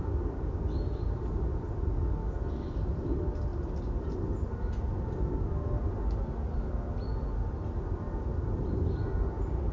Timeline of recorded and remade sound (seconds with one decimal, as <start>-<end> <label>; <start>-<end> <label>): 0.0-9.7 recorded